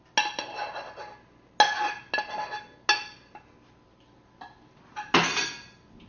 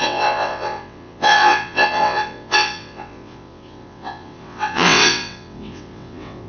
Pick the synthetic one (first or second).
second